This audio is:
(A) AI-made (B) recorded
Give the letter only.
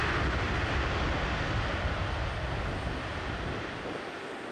B